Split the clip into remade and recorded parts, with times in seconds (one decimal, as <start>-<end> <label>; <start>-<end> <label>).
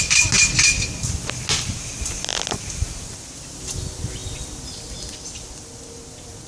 0.0-6.5 recorded